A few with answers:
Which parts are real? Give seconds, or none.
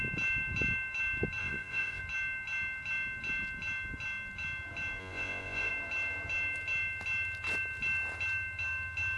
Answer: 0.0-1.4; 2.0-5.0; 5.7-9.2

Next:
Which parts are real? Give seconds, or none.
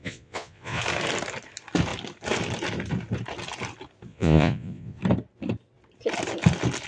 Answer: 0.8-4.1; 5.0-6.9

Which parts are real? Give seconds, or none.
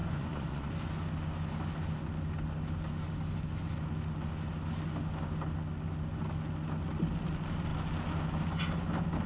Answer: 0.7-9.3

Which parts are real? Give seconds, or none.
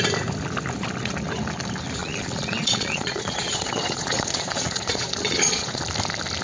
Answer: 0.0-2.0; 5.8-6.4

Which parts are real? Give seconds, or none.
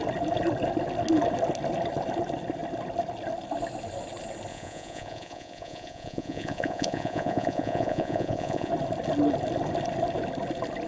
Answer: 0.0-4.5; 8.7-10.9